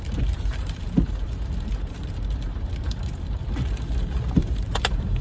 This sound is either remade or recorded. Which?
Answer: remade